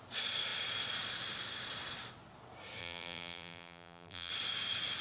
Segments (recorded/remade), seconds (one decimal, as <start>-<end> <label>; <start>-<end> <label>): 0.0-2.8 recorded; 2.8-4.3 remade; 4.3-5.0 recorded